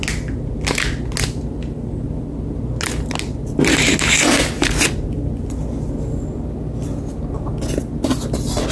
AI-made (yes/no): no